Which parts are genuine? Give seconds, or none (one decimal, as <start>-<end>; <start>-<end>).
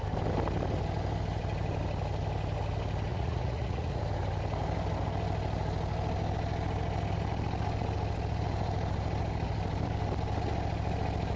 0.0-3.1; 4.0-11.4